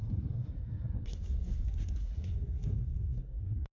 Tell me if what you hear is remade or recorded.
remade